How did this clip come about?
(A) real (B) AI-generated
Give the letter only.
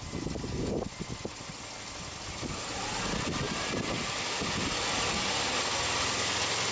A